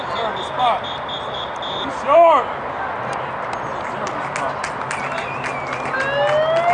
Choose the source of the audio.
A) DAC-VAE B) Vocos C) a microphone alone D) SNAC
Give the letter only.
C